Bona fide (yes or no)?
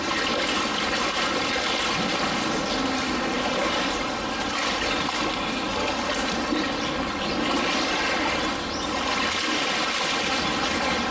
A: yes